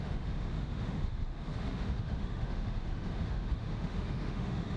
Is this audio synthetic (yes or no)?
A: yes